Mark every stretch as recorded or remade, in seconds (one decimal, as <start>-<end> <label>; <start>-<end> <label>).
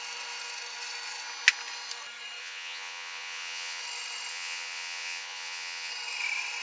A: 0.0-2.4 recorded; 2.4-3.8 remade; 3.8-4.3 recorded; 4.3-5.9 remade; 5.9-6.6 recorded